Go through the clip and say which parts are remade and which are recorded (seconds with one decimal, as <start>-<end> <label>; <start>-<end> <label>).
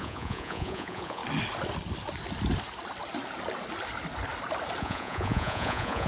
0.0-1.2 remade; 1.2-4.8 recorded; 4.8-6.1 remade